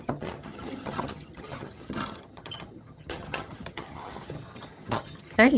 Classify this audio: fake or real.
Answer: fake